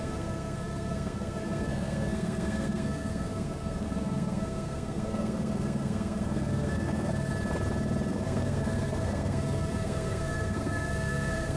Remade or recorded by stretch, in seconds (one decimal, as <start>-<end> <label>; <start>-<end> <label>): 0.0-7.3 remade; 7.3-8.1 recorded; 8.1-11.6 remade